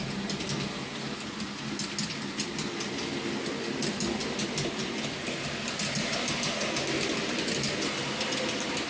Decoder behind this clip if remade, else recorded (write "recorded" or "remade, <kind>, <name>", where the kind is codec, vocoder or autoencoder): recorded